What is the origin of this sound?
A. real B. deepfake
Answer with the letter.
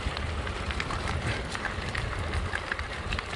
B